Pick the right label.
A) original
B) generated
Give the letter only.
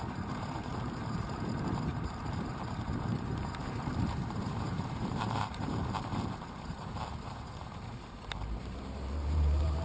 B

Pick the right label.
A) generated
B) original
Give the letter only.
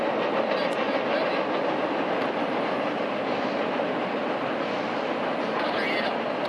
B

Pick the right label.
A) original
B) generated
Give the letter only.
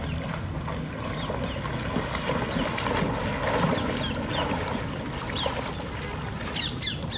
A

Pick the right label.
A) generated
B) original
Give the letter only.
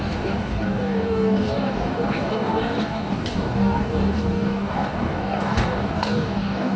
A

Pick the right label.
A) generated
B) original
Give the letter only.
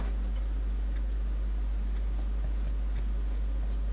B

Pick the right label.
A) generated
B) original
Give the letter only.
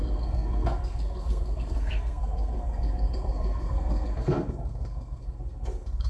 A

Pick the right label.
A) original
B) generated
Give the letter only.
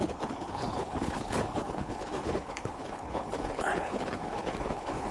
B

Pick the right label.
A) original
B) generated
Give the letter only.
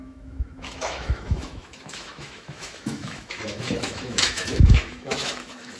B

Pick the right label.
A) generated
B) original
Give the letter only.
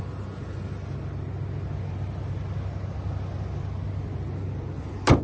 B